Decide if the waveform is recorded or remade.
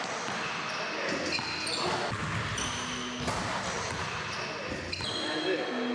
recorded